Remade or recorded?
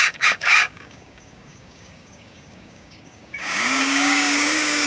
remade